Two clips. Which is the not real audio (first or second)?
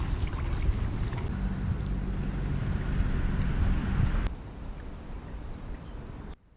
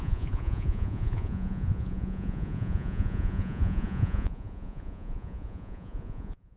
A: second